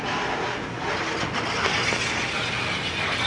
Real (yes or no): yes